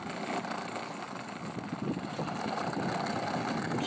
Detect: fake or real real